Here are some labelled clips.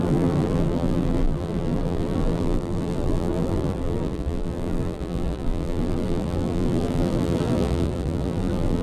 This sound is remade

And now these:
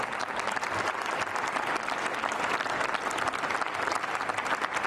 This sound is recorded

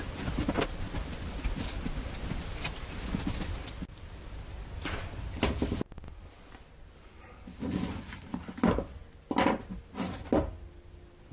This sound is recorded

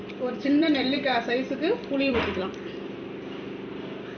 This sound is remade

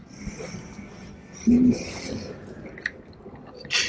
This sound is recorded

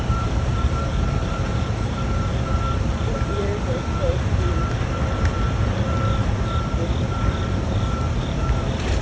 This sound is remade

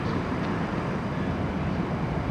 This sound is remade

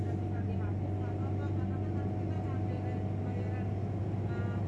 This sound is recorded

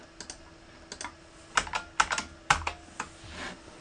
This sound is recorded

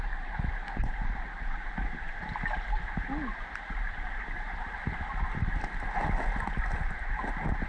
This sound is recorded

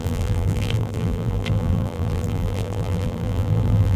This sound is remade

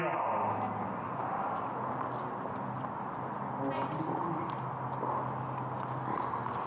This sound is recorded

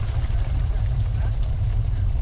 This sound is remade